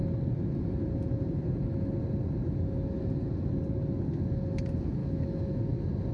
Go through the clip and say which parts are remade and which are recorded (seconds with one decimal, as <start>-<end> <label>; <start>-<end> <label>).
0.0-5.0 recorded; 5.0-5.6 remade; 5.6-6.1 recorded